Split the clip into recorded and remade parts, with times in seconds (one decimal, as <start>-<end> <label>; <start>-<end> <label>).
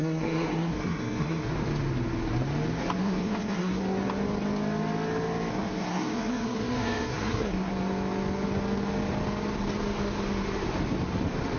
0.0-1.5 remade; 1.5-3.0 recorded; 3.0-3.8 remade; 3.8-5.5 recorded; 5.5-7.7 remade; 7.7-11.6 recorded